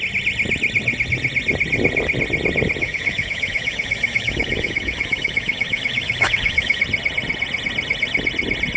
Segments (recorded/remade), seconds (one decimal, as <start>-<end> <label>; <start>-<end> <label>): 0.0-2.8 recorded; 2.8-6.8 remade; 6.8-8.8 recorded